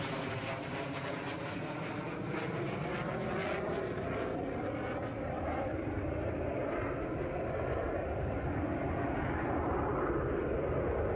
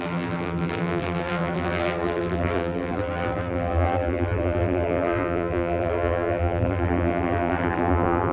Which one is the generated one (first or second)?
second